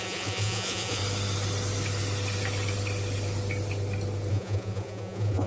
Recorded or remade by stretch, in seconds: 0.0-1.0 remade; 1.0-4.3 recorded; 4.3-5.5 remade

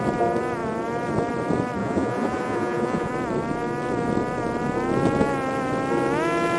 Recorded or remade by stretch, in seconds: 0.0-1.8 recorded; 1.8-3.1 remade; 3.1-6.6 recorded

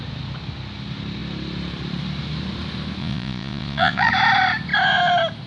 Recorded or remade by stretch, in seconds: 0.0-3.0 recorded; 3.0-4.1 remade; 4.1-5.5 recorded

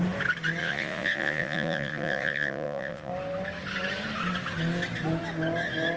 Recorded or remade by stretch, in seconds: 0.0-0.6 recorded; 0.6-3.1 remade; 3.1-6.0 recorded

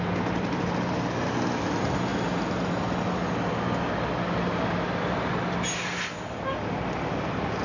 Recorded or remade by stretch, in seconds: 0.0-7.6 recorded

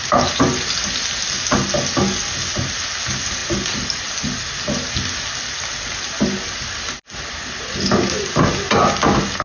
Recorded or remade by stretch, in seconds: 0.0-9.4 recorded